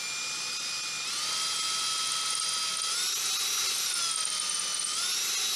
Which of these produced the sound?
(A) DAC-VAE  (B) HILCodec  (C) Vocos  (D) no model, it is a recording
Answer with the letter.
D